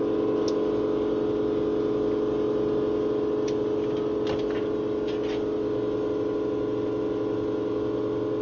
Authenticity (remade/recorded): recorded